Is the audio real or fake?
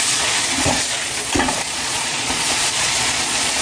fake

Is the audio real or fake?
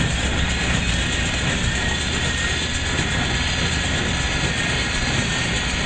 real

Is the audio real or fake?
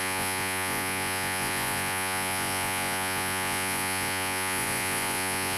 fake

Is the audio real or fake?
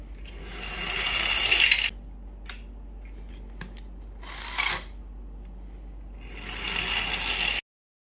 real